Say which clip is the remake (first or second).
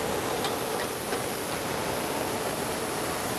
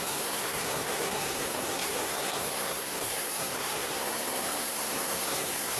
second